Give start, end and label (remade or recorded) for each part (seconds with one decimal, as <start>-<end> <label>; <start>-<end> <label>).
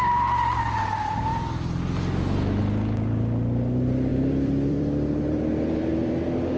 0.0-4.1 recorded; 4.1-6.1 remade; 6.1-6.6 recorded